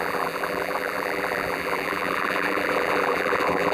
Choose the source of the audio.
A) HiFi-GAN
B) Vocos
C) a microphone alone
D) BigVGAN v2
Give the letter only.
D